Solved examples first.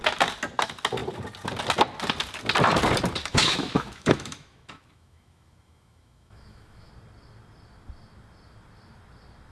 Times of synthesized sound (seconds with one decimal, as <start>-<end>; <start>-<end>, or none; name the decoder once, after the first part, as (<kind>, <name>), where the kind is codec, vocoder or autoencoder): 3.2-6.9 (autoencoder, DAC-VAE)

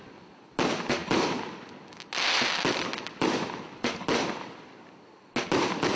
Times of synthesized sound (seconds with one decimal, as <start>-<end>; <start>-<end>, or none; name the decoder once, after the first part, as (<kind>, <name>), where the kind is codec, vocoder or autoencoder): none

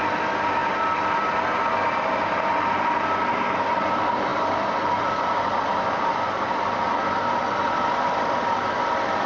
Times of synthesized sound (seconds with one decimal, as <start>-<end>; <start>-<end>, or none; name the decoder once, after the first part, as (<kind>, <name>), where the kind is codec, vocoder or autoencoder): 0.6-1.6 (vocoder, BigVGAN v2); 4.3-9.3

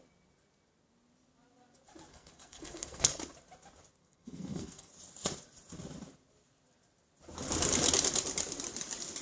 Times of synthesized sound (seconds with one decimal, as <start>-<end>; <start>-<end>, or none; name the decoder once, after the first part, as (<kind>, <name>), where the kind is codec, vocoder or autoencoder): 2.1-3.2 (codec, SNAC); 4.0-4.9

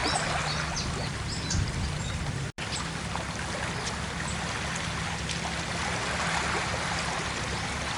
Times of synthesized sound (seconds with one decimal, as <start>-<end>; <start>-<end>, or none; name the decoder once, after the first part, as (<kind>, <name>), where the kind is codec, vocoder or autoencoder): none

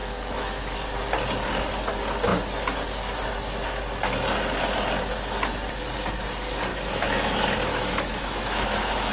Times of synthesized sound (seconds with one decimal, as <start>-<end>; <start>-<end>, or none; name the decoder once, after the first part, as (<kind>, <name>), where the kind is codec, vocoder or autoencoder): 0.0-0.7 (autoencoder, DAC-VAE); 6.7-9.1